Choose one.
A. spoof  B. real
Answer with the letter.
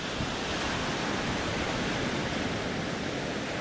B